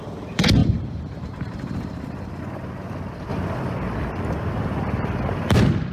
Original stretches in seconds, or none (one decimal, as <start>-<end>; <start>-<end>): 0.0-0.6; 2.4-5.9